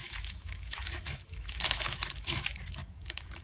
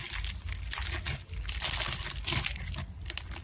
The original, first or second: second